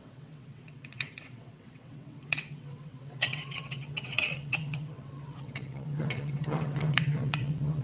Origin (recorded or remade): remade